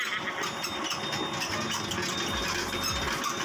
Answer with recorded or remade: recorded